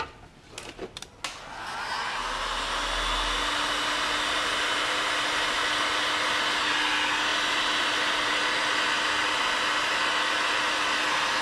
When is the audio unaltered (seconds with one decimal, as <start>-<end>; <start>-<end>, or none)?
0.0-11.4